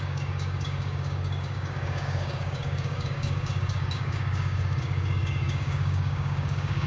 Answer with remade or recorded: remade